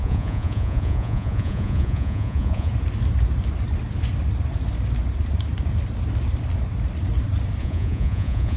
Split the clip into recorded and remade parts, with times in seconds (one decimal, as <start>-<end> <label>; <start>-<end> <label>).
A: 0.0-2.7 remade; 2.7-7.6 recorded; 7.6-8.6 remade